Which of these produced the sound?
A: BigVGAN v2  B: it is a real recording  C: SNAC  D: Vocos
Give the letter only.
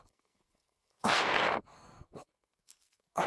C